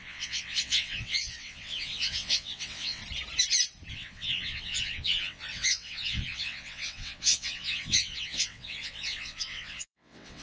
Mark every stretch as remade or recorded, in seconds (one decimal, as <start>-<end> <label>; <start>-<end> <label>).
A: 0.0-3.0 remade; 3.0-3.9 recorded; 3.9-10.4 remade